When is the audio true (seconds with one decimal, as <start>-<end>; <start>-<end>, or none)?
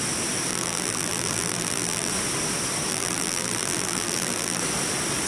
0.0-0.5; 2.1-2.9; 4.6-5.3